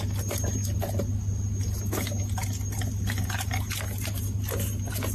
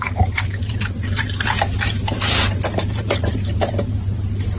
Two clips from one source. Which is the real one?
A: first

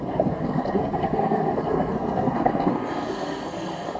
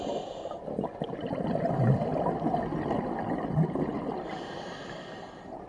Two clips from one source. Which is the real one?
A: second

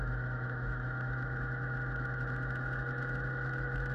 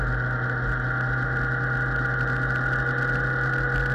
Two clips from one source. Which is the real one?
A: second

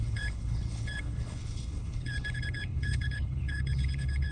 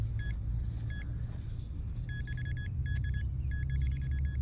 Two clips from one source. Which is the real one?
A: second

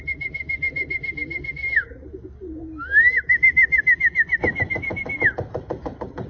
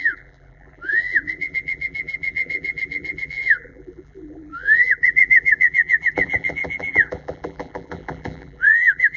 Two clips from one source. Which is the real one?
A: first